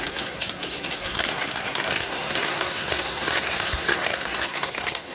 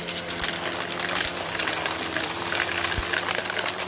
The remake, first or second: first